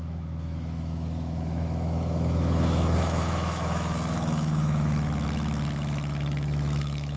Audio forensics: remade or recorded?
remade